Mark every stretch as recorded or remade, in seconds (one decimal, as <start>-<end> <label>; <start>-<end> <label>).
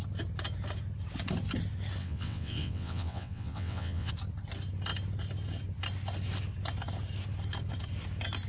0.0-2.0 recorded; 2.0-4.1 remade; 4.1-8.5 recorded